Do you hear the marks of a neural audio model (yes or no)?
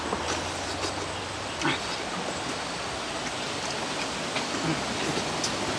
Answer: no